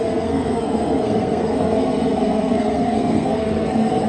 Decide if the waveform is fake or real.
fake